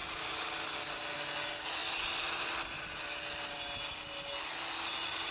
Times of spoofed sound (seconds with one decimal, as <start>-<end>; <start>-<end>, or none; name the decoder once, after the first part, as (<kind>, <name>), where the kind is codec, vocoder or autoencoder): none